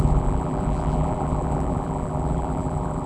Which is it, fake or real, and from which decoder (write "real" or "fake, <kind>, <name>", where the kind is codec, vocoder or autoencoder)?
fake, vocoder, BigVGAN v2